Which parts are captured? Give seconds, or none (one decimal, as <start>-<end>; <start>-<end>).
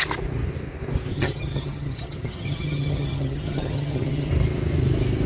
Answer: 0.0-1.1; 4.3-5.3